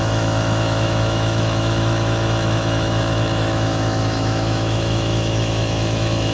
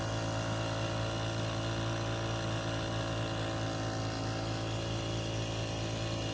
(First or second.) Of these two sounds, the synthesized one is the first